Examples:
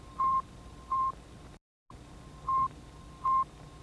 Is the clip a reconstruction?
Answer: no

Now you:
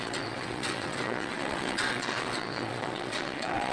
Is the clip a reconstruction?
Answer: yes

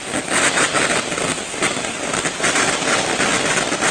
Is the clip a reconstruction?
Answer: no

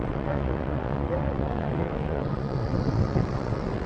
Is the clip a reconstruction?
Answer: yes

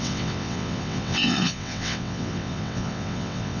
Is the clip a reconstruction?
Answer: yes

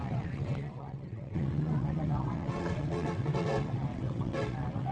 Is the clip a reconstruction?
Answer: yes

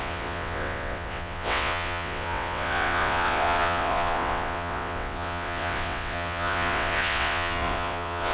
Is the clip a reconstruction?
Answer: yes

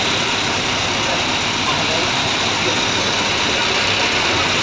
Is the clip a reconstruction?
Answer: no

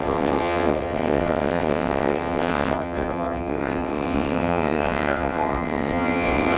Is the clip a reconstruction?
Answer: yes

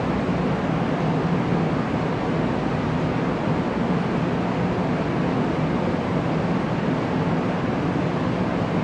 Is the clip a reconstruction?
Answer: no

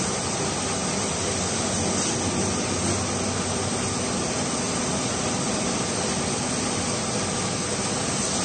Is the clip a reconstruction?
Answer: no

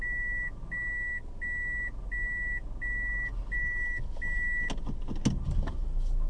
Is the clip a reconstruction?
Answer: no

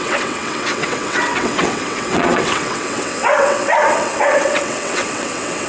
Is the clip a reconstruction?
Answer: yes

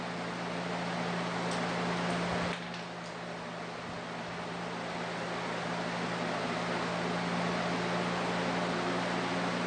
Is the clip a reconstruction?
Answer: no